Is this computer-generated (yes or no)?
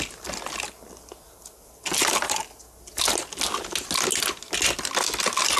no